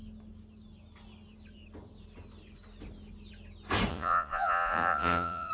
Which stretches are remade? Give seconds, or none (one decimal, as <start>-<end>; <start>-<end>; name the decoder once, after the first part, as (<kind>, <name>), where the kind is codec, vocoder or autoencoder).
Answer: 3.9-5.5 (vocoder, Vocos)